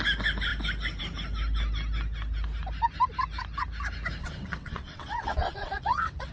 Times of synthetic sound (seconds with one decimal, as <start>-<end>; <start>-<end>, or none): 4.2-6.3